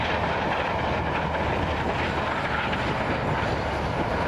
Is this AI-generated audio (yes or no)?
no